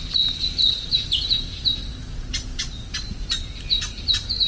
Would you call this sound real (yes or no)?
yes